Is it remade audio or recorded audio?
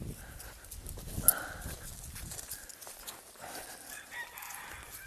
recorded